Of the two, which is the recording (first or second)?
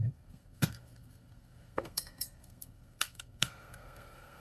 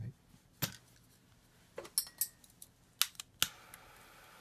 second